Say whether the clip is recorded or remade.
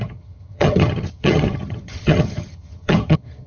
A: remade